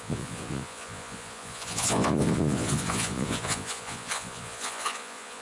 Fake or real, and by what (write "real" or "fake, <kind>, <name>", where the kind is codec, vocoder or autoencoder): fake, vocoder, Vocos